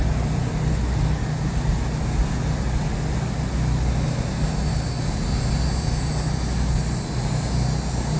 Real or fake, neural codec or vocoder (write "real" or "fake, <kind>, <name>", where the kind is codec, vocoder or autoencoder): real